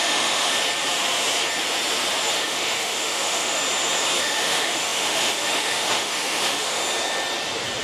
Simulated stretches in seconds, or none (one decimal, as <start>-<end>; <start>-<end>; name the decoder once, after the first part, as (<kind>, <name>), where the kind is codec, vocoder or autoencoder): 0.0-0.5 (autoencoder, DAC-VAE); 2.3-3.6; 4.2-6.8